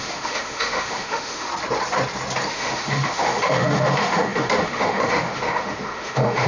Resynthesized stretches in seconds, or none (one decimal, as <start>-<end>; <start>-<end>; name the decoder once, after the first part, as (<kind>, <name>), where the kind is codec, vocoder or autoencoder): 0.0-1.5 (autoencoder, DAC-VAE); 2.5-6.5